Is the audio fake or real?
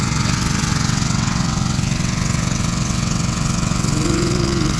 fake